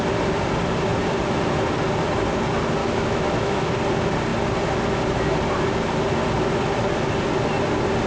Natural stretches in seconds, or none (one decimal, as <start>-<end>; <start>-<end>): 0.0-2.8; 3.7-8.1